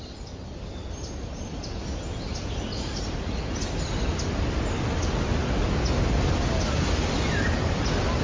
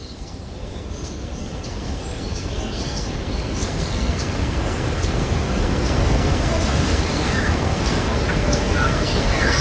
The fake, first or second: second